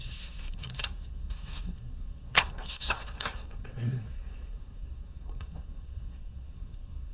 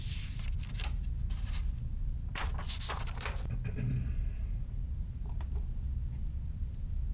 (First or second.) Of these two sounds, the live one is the second